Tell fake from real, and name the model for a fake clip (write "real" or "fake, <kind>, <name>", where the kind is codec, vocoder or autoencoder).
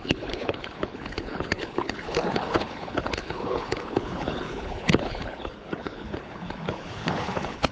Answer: fake, codec, HILCodec